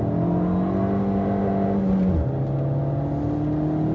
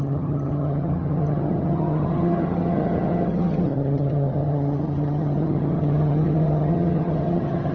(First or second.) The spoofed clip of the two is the second